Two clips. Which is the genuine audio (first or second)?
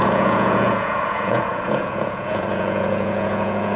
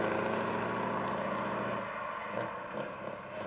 second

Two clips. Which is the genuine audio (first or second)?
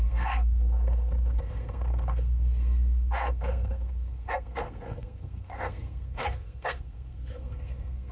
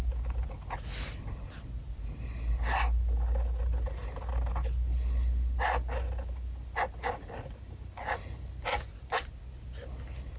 second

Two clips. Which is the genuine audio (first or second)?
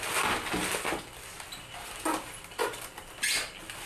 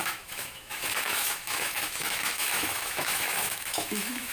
first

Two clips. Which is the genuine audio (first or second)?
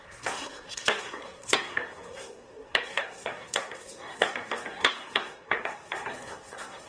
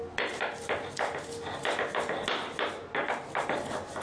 second